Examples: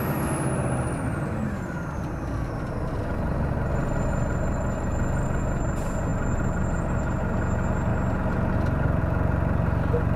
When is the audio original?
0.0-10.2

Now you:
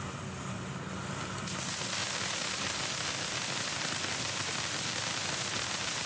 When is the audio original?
0.0-6.1

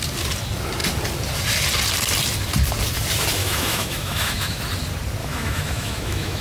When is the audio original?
0.0-3.4; 4.6-5.2

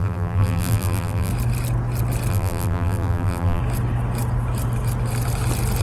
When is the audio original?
1.3-2.3; 3.6-5.8

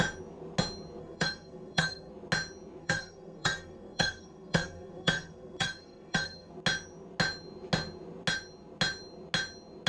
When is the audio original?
0.0-1.0; 2.1-2.8; 6.5-9.9

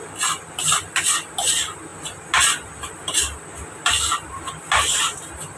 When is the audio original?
0.0-5.6

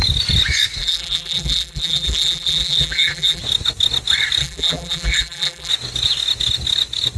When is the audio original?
0.0-0.8; 3.4-4.4; 5.7-7.2

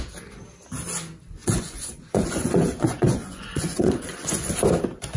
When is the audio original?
0.0-1.4; 4.5-5.2